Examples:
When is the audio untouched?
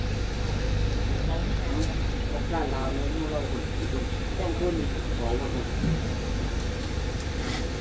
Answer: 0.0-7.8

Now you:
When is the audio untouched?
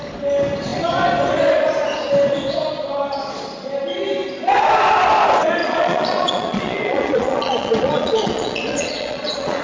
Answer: 0.0-5.6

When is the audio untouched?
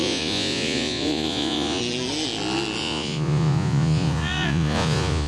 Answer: 1.8-2.8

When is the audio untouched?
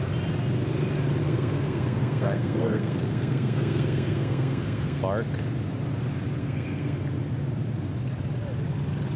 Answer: 0.0-1.2; 5.0-6.4; 7.0-9.2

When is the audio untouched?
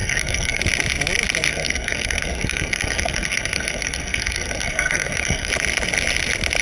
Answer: 0.6-1.5; 5.5-6.6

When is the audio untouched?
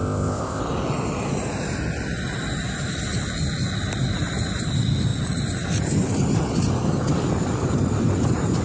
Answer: 0.6-8.6